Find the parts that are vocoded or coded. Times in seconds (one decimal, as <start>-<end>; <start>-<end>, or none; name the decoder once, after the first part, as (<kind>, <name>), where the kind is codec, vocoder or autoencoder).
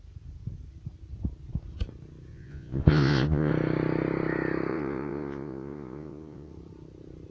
2.3-3.5 (vocoder, Vocos); 4.7-6.5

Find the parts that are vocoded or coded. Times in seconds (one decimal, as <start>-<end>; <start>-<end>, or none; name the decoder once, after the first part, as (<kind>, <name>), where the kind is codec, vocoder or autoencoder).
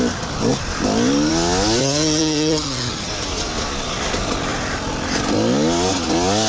1.8-3.1 (vocoder, HiFi-GAN)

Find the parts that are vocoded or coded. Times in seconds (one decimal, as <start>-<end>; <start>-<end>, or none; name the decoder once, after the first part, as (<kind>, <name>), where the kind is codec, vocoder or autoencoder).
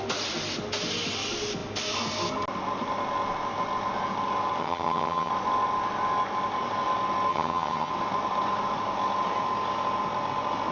4.6-5.3 (vocoder, HiFi-GAN); 7.3-7.9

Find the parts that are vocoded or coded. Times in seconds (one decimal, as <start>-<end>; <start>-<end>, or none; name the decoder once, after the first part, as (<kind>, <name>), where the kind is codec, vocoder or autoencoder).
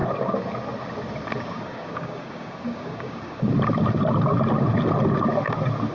1.4-3.5 (codec, DAC)